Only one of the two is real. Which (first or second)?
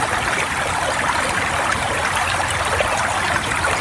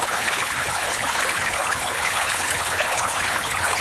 first